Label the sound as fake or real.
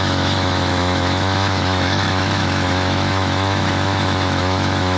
fake